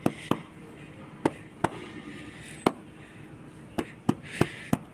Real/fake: real